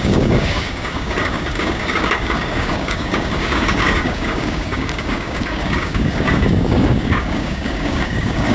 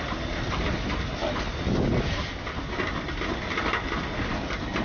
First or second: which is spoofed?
first